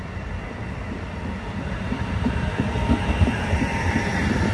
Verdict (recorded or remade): recorded